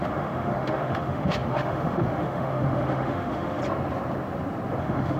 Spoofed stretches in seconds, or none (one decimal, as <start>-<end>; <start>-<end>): 0.0-3.6; 4.8-5.2